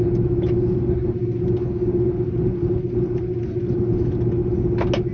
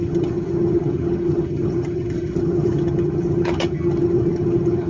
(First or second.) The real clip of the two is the first